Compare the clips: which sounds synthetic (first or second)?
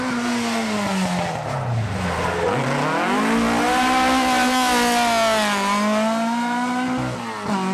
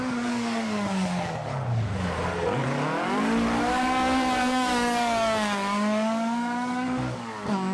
second